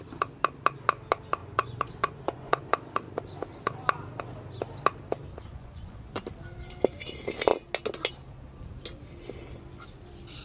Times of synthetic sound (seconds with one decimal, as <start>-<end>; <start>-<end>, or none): 1.4-2.6; 5.5-6.2